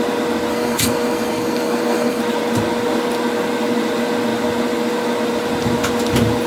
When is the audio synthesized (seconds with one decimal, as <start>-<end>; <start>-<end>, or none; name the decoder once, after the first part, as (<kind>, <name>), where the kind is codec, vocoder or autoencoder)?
0.5-2.2 (codec, SNAC)